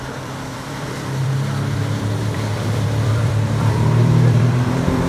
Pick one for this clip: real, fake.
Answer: fake